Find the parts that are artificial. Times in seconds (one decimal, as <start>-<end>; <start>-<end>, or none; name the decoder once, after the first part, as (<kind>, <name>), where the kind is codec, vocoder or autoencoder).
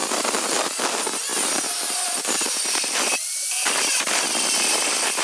none